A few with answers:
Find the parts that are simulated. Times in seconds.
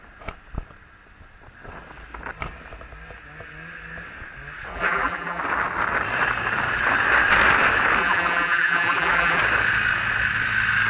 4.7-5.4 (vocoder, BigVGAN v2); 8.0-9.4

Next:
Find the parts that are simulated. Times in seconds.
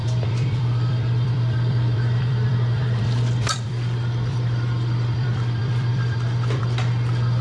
0.0-3.7 (vocoder, BigVGAN v2); 4.3-6.6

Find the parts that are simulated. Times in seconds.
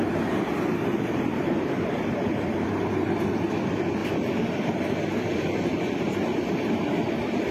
0.5-2.7 (vocoder, BigVGAN v2); 4.0-6.6